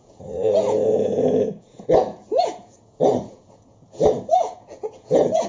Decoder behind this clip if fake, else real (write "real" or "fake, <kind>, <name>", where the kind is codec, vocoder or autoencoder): fake, vocoder, Vocos